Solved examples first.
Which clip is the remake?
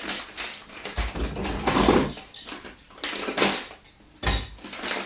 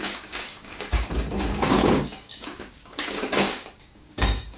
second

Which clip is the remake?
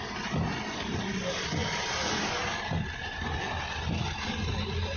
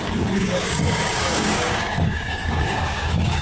second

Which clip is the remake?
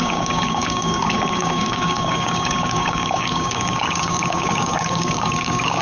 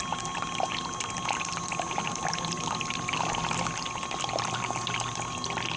first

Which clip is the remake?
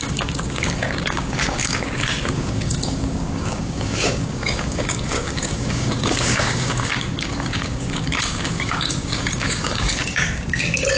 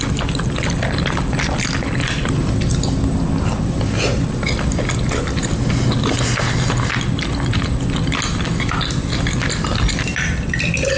first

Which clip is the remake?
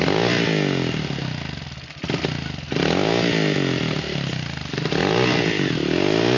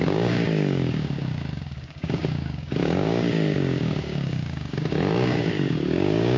second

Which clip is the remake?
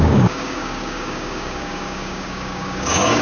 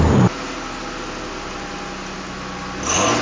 first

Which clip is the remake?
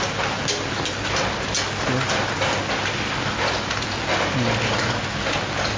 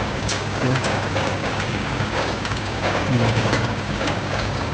second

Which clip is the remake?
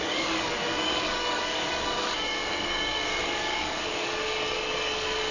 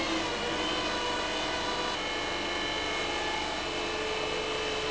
first